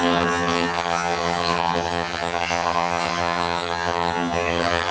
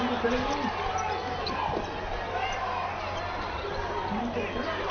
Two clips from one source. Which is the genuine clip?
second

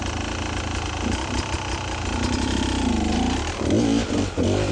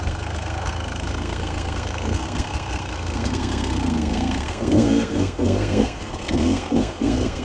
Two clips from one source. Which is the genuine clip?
first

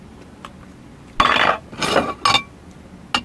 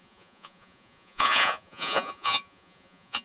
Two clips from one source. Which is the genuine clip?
first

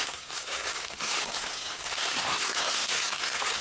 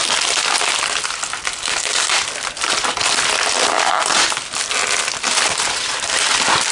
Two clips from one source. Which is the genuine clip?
second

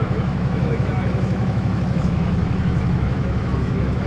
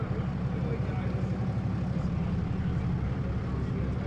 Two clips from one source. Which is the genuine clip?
second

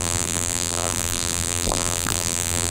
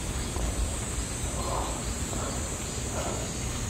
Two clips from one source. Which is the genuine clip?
second